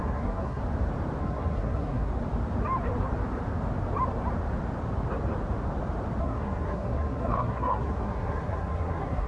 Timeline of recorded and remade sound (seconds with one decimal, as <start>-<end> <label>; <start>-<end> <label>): 0.0-0.6 remade; 0.6-1.2 recorded; 1.2-2.1 remade; 2.1-6.2 recorded; 6.2-9.3 remade